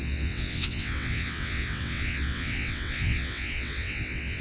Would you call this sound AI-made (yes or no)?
yes